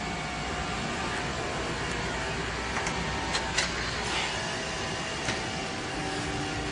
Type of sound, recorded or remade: recorded